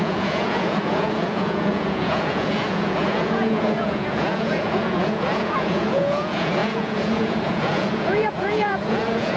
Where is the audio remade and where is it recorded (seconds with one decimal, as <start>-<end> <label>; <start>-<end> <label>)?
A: 0.0-9.4 remade